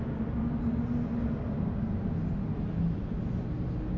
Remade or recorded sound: recorded